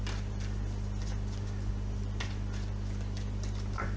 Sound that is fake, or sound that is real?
real